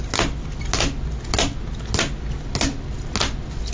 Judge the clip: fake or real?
real